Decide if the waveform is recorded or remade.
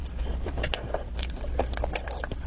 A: recorded